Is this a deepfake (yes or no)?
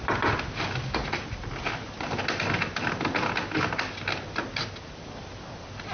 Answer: no